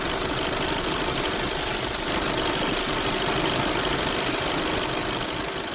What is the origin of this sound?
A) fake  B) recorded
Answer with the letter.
B